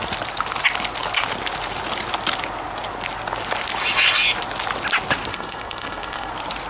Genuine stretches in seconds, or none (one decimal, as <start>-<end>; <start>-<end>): 0.0-5.3; 6.3-6.7